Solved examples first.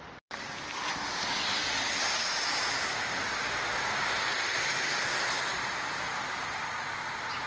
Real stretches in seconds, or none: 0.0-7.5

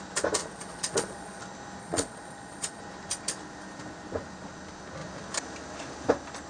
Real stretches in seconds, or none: 0.0-0.4; 1.4-1.8; 2.8-6.5

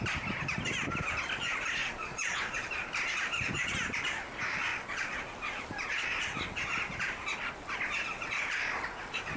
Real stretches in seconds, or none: 0.0-1.8; 2.7-4.7; 5.2-9.4

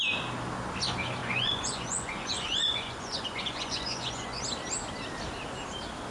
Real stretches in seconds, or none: 0.0-1.2; 4.4-6.1

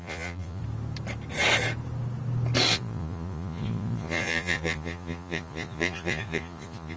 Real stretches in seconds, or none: 0.6-2.7

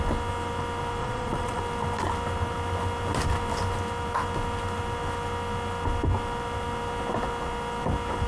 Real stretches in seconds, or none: 0.0-1.0; 1.6-8.3

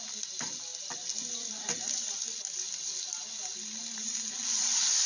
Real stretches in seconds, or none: 0.0-5.1